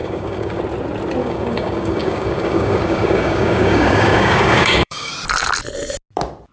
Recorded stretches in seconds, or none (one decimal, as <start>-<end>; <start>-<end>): 0.6-1.2; 5.1-6.5